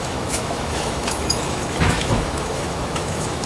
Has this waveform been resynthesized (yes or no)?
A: yes